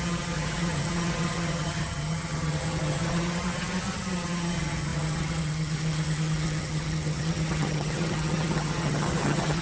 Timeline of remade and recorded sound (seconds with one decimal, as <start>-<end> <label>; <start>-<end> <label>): 0.0-9.6 remade

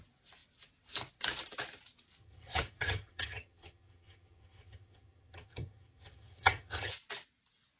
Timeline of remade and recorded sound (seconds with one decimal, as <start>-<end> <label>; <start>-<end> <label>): 0.0-2.2 recorded; 2.2-6.9 remade; 6.9-7.8 recorded

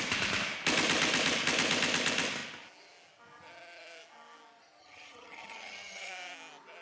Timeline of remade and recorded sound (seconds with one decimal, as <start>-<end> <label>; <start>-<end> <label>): 0.0-4.8 recorded; 4.8-6.1 remade; 6.1-6.8 recorded

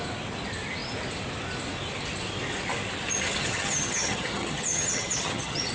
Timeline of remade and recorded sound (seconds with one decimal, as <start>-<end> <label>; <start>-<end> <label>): 0.0-3.4 recorded; 3.4-5.7 remade

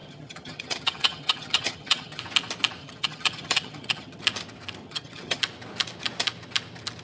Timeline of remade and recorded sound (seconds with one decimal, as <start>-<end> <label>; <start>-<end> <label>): 0.0-2.2 remade; 2.2-2.8 recorded; 2.8-4.2 remade; 4.2-4.8 recorded; 4.8-5.4 remade; 5.4-7.0 recorded

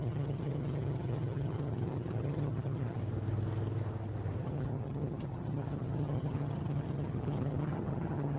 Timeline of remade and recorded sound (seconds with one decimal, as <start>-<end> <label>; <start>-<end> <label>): 0.0-3.0 remade; 3.0-4.4 recorded; 4.4-8.4 remade